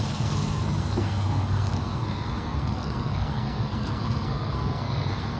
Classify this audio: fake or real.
fake